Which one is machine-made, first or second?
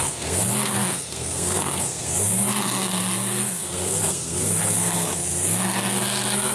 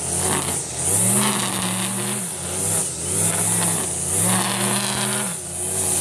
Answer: first